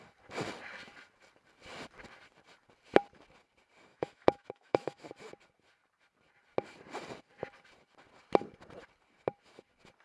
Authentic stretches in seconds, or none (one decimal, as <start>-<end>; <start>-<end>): 0.0-3.9; 5.0-10.0